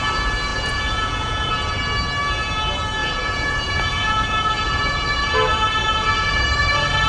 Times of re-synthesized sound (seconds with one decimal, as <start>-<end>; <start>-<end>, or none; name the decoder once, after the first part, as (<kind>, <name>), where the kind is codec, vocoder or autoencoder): 0.5-1.5 (vocoder, Vocos); 3.0-5.2; 5.8-6.4